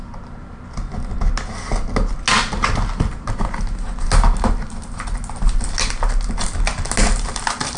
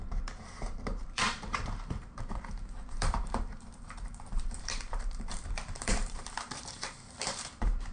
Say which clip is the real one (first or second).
first